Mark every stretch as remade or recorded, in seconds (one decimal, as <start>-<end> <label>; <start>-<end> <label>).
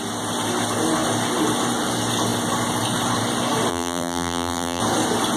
0.0-3.7 recorded; 3.7-4.8 remade; 4.8-5.4 recorded